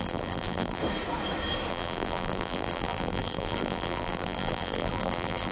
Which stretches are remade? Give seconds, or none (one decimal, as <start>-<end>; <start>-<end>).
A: 0.0-0.8; 1.7-5.5